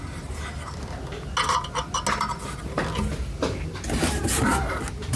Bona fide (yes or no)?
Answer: yes